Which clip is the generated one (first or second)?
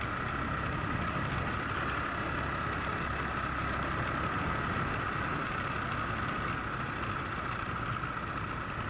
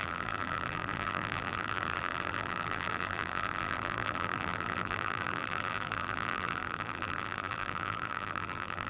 second